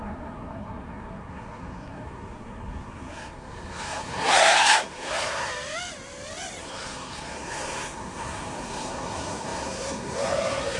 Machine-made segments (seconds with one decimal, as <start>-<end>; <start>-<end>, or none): 0.0-5.5; 6.6-10.8